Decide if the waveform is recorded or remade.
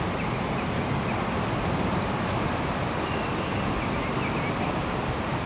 recorded